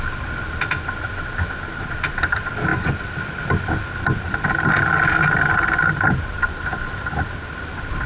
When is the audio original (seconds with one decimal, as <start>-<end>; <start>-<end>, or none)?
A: 0.0-8.1